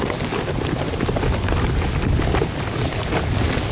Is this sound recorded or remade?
recorded